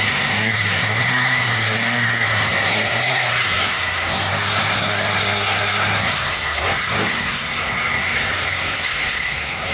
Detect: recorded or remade remade